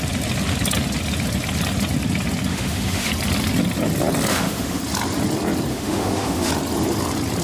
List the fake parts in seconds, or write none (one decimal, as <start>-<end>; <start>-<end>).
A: 2.5-3.1; 4.3-4.8; 5.7-6.5